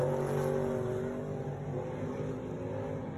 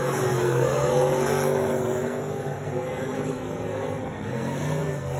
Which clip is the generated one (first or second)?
second